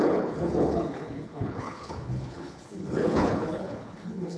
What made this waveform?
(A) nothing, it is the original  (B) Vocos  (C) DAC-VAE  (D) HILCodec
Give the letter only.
D